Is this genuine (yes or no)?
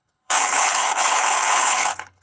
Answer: no